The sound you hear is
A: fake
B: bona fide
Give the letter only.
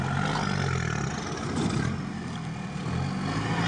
B